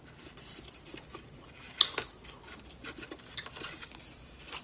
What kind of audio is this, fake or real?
real